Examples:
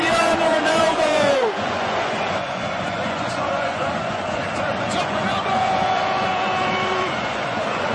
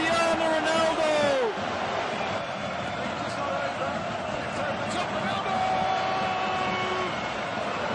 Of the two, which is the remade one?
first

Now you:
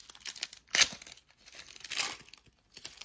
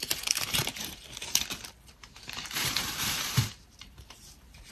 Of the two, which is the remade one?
second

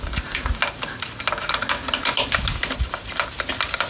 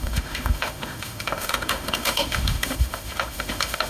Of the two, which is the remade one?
second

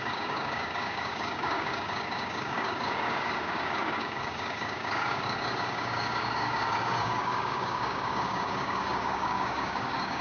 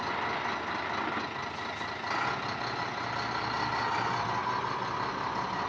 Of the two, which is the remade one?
first